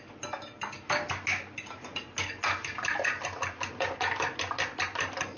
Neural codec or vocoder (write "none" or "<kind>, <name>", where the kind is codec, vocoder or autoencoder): none